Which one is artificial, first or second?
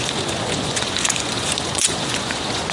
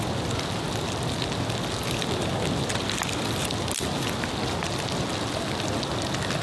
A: first